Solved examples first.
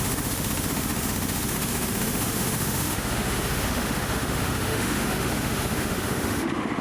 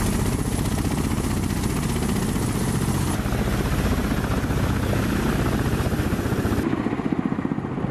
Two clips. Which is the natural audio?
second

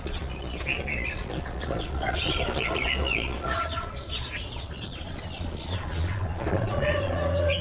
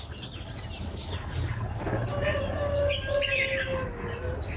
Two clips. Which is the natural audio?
second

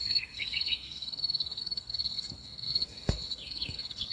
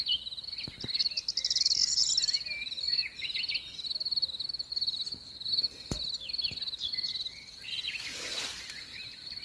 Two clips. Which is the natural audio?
second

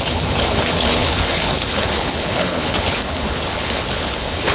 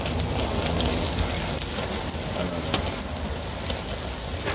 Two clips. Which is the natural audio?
second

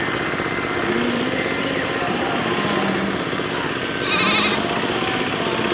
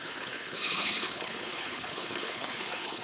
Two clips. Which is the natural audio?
first